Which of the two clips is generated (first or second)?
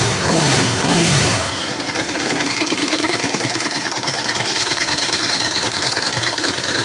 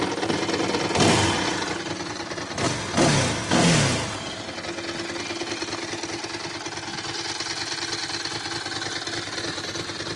first